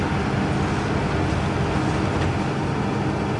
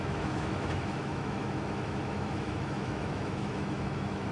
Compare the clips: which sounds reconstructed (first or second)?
second